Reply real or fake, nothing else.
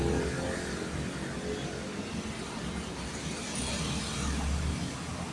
real